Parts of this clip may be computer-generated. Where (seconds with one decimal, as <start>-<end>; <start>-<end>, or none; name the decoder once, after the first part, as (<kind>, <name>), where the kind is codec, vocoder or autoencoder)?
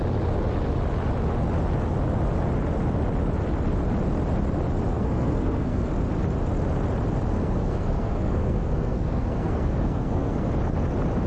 4.9-5.9 (codec, SNAC); 7.3-10.5